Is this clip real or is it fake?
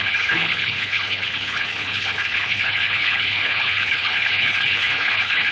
fake